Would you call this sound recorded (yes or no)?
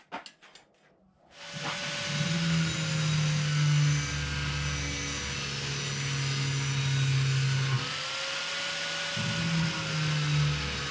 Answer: yes